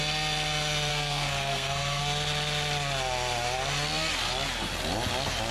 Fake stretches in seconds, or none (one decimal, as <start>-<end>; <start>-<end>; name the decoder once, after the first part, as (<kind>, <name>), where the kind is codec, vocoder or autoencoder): 0.9-2.0 (codec, SNAC)